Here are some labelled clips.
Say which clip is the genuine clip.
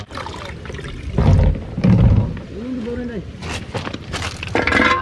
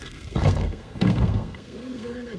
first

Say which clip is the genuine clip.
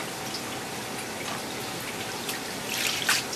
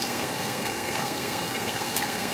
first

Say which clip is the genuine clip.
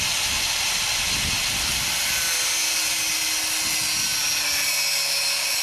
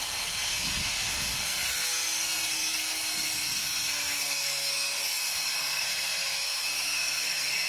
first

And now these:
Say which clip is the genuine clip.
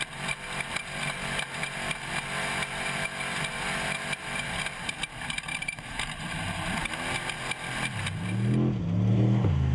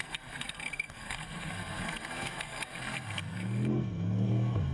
first